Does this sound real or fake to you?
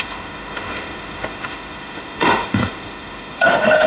fake